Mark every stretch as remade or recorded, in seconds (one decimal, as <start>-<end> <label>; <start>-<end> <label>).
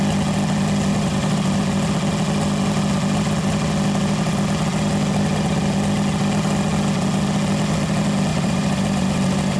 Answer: 0.0-0.9 recorded; 0.9-1.6 remade; 1.6-8.3 recorded; 8.3-9.6 remade